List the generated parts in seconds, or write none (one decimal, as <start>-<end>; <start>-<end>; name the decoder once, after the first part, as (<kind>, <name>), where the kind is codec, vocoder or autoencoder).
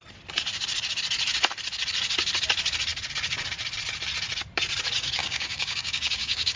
5.2-6.6 (codec, DAC)